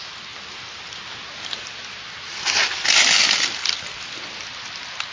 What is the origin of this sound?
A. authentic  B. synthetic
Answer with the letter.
A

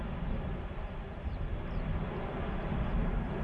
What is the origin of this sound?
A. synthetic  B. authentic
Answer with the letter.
B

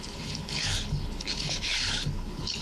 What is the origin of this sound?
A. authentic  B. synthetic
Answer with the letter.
B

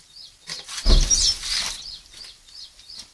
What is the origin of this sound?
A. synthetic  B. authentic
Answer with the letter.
B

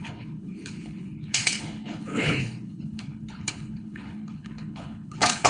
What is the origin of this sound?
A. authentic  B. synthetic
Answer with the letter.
B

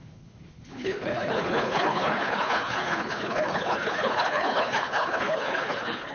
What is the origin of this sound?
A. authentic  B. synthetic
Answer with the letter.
B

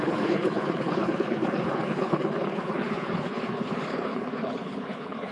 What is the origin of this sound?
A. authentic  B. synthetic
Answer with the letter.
B